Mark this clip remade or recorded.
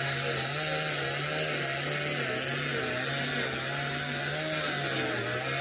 recorded